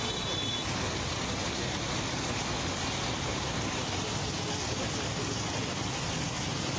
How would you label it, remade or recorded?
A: recorded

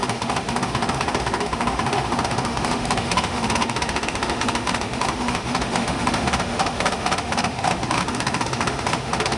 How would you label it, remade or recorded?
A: remade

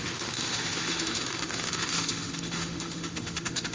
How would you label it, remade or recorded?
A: remade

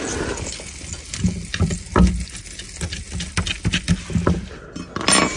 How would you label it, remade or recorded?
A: recorded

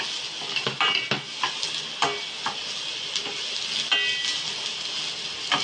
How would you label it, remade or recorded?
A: recorded